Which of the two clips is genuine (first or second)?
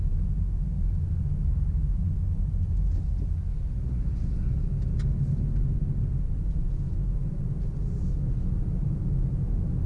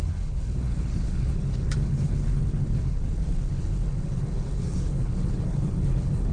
first